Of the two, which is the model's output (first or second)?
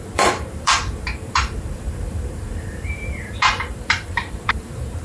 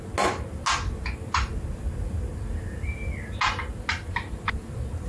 first